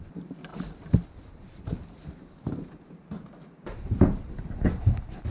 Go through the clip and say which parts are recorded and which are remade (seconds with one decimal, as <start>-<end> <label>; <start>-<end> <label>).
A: 0.0-5.3 remade